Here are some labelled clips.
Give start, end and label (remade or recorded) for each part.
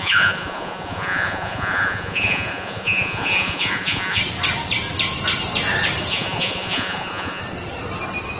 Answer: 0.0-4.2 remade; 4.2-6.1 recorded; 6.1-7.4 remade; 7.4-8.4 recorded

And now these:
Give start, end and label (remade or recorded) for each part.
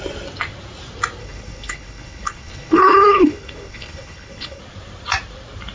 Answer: 0.0-1.2 recorded; 1.2-4.6 remade; 4.6-5.7 recorded